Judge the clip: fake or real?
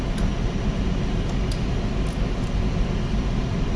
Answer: real